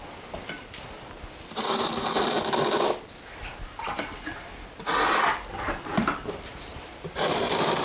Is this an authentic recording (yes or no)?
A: yes